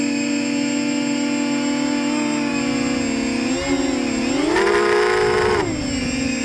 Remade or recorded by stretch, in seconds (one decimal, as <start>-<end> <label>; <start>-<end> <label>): 0.0-6.4 recorded